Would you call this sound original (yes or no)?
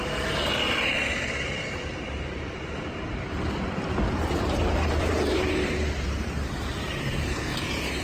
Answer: no